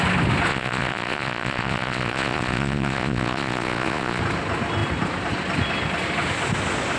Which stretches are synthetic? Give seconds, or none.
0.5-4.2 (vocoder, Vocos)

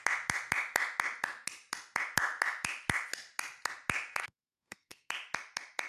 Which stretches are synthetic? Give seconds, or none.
4.2-5.1 (codec, SNAC)

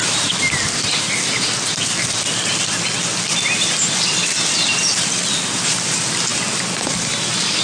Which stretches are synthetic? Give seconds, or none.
none

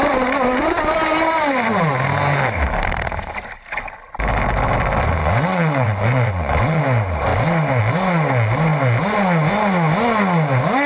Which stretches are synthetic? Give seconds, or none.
5.2-6.8 (vocoder, WaveNeXt)

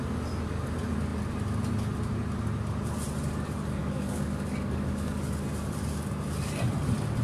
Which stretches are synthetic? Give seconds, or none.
3.8-5.2 (codec, DAC)

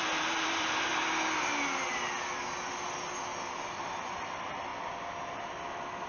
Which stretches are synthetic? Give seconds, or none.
0.0-0.9 (vocoder, BigVGAN v2); 3.8-4.7

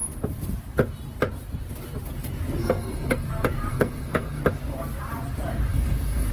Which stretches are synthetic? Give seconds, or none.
2.6-3.3 (codec, SNAC); 3.7-4.4; 5.7-6.3

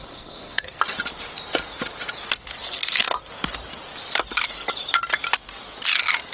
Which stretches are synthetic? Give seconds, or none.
0.0-0.8 (codec, SNAC); 2.6-3.3